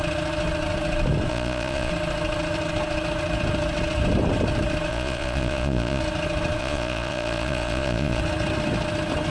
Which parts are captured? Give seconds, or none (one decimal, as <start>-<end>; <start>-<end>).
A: 0.0-1.3; 1.9-4.9; 6.0-6.6; 8.2-9.3